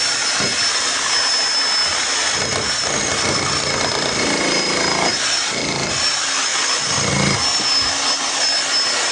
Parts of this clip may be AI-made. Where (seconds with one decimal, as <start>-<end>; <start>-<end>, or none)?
none